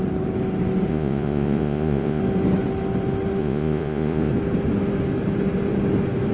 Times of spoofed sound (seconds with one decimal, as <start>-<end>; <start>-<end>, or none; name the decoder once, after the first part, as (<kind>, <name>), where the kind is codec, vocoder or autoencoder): 0.9-2.2 (vocoder, Vocos); 3.4-4.3